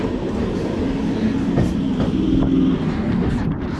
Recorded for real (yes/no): yes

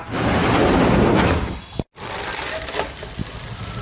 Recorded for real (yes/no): yes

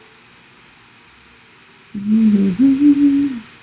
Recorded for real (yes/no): yes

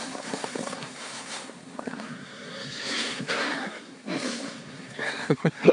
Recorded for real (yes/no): no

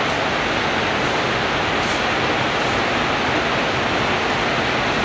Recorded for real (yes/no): yes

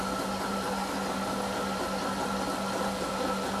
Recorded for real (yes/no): yes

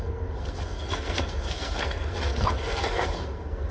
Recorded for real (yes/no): no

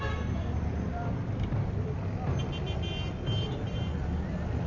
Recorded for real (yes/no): yes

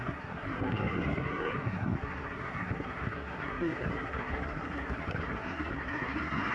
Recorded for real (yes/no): no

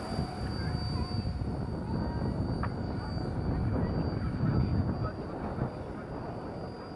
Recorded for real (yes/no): yes